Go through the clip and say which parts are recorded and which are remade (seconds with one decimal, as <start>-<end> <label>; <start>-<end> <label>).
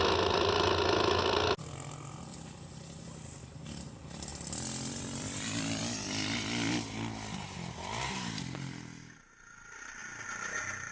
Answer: 0.0-4.3 recorded; 4.3-5.8 remade; 5.8-10.9 recorded